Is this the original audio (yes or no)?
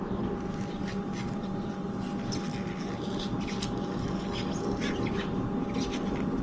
yes